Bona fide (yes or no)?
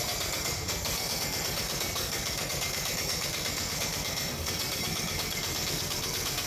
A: no